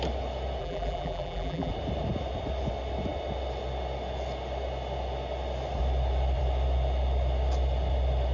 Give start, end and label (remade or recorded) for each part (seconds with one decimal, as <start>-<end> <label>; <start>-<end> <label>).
0.0-0.6 recorded; 0.6-1.7 remade; 1.7-8.3 recorded